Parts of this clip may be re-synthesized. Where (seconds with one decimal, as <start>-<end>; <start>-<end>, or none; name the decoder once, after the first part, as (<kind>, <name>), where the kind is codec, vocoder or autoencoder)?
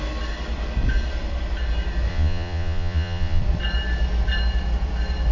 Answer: 2.1-3.4 (vocoder, Vocos)